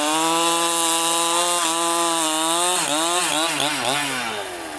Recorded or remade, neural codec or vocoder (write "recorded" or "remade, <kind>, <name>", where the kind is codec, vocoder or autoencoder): recorded